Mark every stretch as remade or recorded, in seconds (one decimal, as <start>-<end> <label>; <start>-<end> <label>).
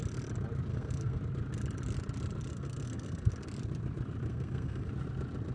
0.0-0.7 recorded; 0.7-1.2 remade; 1.2-2.5 recorded; 2.5-3.3 remade; 3.3-4.3 recorded; 4.3-4.9 remade; 4.9-5.5 recorded